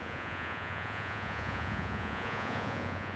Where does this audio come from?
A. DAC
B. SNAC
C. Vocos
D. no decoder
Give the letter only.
C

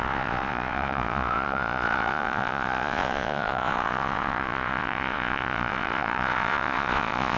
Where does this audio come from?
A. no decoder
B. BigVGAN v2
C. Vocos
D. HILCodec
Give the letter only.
C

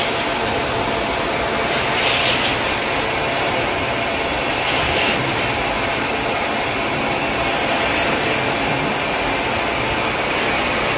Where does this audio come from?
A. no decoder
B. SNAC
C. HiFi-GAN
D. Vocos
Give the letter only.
A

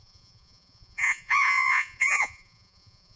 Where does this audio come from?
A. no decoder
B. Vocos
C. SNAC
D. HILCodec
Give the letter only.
B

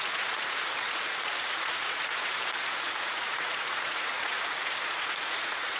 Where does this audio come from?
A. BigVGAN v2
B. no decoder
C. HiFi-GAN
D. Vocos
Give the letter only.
D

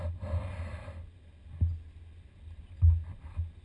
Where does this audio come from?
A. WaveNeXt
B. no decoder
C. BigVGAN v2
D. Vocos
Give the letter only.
B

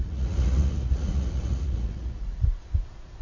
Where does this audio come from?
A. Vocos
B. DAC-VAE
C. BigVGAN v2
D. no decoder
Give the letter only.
A